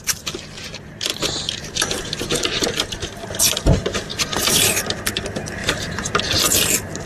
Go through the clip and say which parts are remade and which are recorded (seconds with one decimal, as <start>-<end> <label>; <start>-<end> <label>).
0.0-1.1 recorded; 1.1-3.4 remade; 3.4-4.1 recorded; 4.1-4.9 remade; 4.9-5.6 recorded; 5.6-6.2 remade; 6.2-7.1 recorded